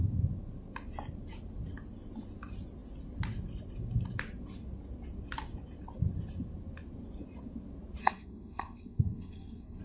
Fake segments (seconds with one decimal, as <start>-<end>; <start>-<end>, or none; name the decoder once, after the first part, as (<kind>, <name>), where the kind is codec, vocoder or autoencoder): 8.0-9.8 (codec, SNAC)